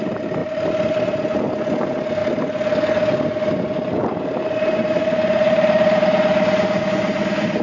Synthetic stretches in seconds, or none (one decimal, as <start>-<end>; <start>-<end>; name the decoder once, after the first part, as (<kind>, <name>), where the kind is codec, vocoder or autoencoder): 0.4-1.4 (vocoder, BigVGAN v2); 4.0-6.0